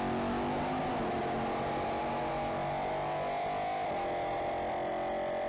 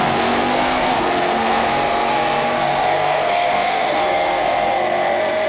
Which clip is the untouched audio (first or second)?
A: first